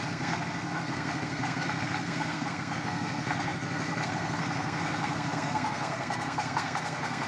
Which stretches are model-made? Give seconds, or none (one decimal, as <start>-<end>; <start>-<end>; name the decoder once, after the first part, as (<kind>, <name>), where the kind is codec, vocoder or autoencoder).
0.0-7.3 (codec, SNAC)